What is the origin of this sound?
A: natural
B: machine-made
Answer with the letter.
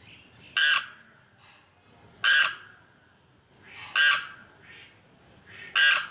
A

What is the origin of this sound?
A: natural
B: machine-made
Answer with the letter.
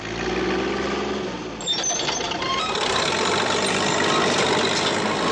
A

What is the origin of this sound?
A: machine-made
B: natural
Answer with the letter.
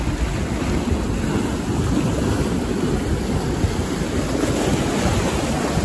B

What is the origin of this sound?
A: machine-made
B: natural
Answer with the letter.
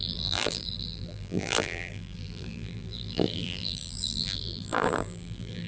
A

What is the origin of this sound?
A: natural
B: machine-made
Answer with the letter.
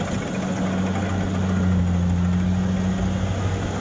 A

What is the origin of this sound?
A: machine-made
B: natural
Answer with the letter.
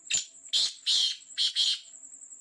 B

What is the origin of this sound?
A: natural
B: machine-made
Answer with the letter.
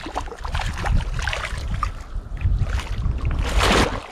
A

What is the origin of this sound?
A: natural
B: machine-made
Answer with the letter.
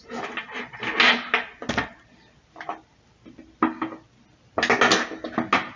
A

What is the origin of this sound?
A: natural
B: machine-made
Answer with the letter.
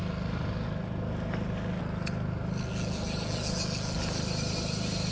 A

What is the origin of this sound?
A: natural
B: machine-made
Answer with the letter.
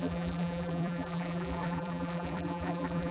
B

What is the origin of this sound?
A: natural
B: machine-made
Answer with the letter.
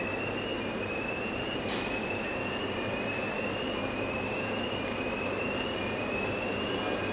B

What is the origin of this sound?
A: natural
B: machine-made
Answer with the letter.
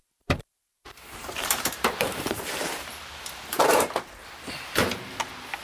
B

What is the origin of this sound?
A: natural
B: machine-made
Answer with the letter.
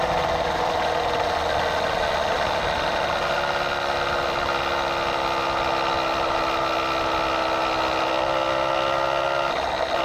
A